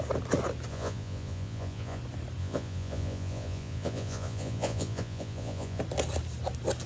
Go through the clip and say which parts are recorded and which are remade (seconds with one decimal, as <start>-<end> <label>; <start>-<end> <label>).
0.0-0.7 recorded; 0.7-2.0 remade; 2.0-2.4 recorded; 2.4-5.8 remade; 5.8-6.9 recorded